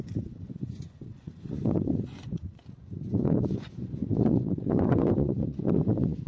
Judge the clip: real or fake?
fake